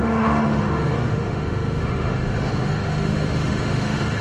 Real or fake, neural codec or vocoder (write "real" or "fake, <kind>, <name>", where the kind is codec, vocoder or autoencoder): fake, autoencoder, DAC-VAE